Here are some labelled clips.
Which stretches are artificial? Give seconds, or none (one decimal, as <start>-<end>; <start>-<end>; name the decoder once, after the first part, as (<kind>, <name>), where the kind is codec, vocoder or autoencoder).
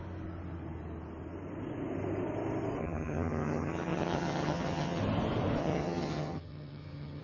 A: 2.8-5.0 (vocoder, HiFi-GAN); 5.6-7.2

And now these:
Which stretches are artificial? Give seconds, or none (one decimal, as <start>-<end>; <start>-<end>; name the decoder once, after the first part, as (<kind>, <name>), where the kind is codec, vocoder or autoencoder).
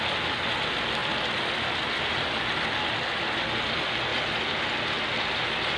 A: none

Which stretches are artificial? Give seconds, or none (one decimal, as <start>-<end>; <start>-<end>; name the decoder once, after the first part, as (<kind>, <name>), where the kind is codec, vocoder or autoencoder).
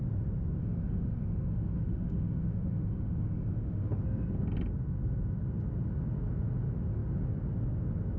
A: 0.6-4.0 (autoencoder, DAC-VAE)